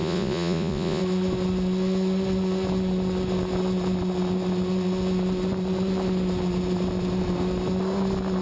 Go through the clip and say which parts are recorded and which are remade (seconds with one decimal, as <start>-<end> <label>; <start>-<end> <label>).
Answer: 0.0-1.0 remade; 1.0-8.4 recorded